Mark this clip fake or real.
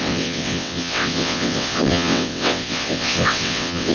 fake